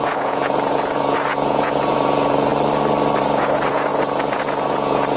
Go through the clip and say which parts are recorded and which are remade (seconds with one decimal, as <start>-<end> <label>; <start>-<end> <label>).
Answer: 0.0-2.5 remade; 2.5-3.2 recorded; 3.2-5.2 remade